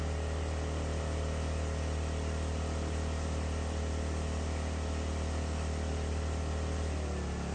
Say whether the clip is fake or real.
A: real